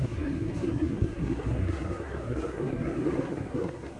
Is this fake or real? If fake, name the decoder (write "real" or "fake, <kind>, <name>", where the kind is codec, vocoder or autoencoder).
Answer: fake, codec, SNAC